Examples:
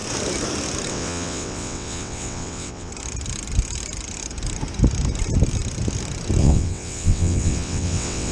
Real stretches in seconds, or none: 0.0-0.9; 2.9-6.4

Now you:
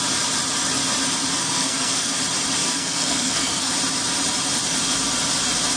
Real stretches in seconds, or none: 0.0-1.4; 2.2-2.6; 3.7-5.8

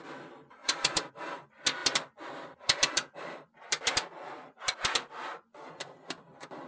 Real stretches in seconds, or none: 0.0-0.6; 1.1-1.8; 5.7-6.7

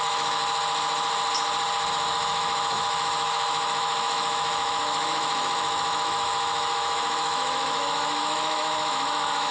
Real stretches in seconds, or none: 0.4-1.9

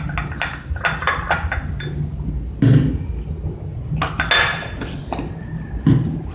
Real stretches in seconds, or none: 0.0-6.3

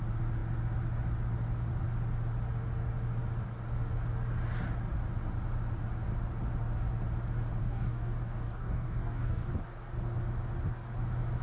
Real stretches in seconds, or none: 0.0-7.6; 9.5-11.4